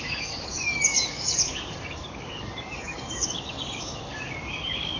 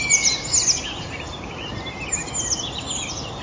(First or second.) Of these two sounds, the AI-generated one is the first